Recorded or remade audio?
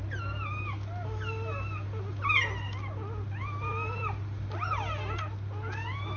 recorded